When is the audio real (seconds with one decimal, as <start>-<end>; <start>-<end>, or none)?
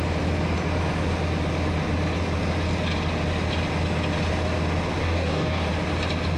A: 0.0-5.0; 5.7-6.4